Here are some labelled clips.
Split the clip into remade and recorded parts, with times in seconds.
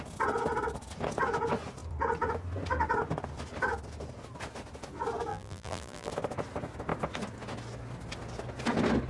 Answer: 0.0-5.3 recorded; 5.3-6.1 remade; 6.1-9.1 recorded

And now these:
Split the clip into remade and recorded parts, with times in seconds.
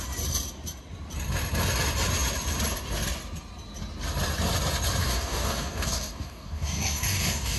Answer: 0.0-5.0 recorded; 5.0-7.6 remade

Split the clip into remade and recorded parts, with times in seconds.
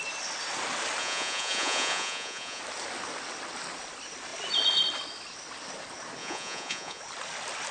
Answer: 0.0-1.0 recorded; 1.0-2.6 remade; 2.6-6.2 recorded; 6.2-7.0 remade; 7.0-7.7 recorded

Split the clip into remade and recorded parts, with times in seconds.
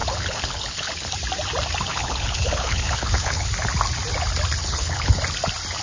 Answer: 0.0-0.9 remade; 0.9-1.9 recorded; 1.9-3.5 remade; 3.5-4.6 recorded; 4.6-5.2 remade; 5.2-5.8 recorded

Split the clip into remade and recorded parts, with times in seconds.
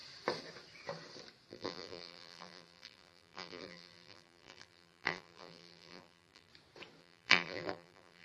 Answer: 0.0-1.5 recorded; 1.5-6.5 remade; 6.5-7.0 recorded; 7.0-8.2 remade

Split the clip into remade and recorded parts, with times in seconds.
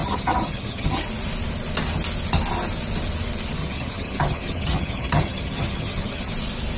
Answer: 0.0-1.0 remade; 1.0-3.6 recorded; 3.6-6.3 remade; 6.3-6.8 recorded